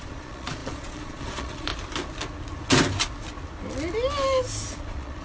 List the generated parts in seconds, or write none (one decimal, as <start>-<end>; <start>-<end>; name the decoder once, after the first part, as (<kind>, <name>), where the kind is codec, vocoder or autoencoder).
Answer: 0.0-1.7 (vocoder, Vocos); 4.7-5.2